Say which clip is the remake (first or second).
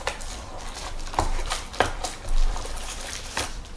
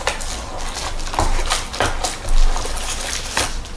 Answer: first